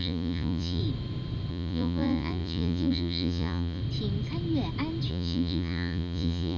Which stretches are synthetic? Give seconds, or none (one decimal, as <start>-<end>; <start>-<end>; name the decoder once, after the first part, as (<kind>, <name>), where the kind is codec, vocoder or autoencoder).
0.0-0.8 (vocoder, Vocos); 1.5-3.8; 5.1-6.6